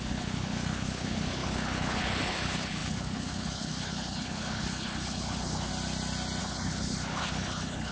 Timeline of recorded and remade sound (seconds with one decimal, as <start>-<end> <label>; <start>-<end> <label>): 0.0-5.7 remade; 5.7-6.4 recorded; 6.4-7.9 remade